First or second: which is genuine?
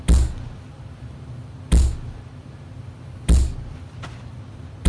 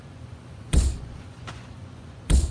first